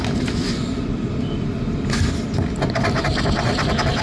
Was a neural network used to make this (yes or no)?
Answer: no